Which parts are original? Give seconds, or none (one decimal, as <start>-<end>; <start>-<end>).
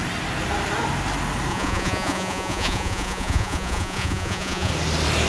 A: 0.0-1.5; 4.7-5.3